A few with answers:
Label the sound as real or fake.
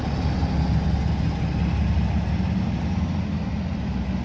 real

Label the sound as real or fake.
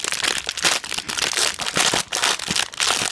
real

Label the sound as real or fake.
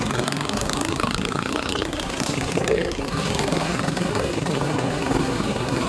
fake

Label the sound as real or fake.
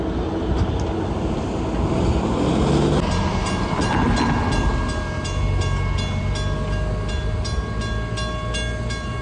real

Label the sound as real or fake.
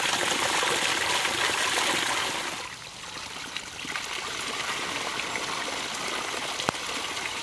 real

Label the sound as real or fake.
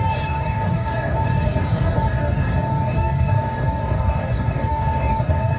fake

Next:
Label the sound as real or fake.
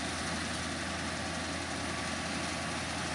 real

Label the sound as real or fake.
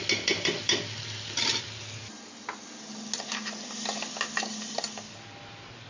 real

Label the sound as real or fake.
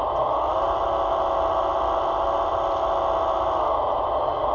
real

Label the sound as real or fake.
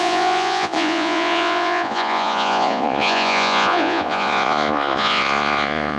fake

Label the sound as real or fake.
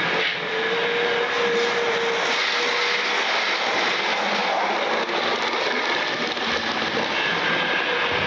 real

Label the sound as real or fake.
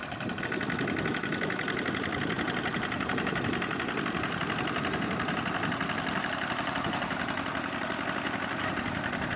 real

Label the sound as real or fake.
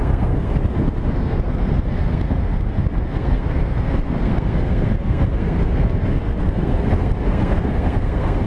fake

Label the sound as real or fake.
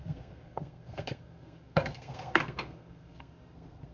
fake